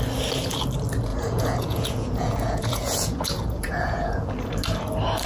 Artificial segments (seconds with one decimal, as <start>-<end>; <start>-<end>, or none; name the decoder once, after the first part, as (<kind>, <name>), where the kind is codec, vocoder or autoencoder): 1.1-4.3 (vocoder, Vocos)